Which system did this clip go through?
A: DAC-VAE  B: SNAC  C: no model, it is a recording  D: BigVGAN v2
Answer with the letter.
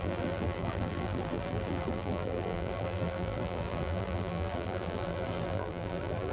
D